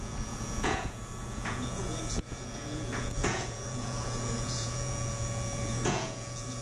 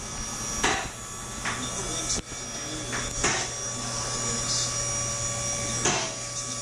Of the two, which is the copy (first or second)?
first